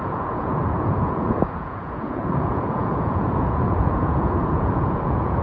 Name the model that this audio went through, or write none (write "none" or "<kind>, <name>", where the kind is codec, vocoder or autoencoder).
vocoder, Vocos